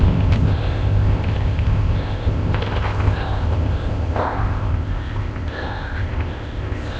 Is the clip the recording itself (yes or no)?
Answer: no